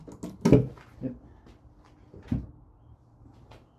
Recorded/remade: recorded